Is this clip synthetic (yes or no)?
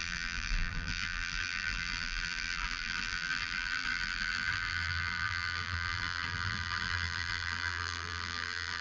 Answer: yes